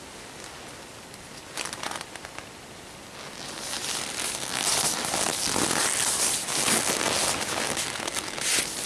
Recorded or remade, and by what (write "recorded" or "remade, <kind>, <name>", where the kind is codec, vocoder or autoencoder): recorded